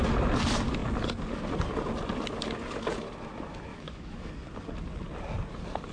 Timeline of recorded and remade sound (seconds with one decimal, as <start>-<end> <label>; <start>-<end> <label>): 0.0-3.7 recorded; 3.7-4.3 remade; 4.3-5.9 recorded